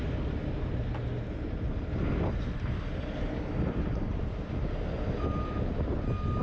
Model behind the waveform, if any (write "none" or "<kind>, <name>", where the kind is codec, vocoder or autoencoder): none